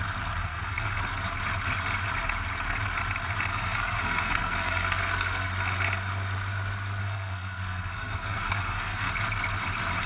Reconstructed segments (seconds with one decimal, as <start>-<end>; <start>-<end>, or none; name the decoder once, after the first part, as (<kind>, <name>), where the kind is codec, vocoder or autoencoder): 0.4-1.0 (codec, SNAC); 3.5-5.5; 7.0-9.1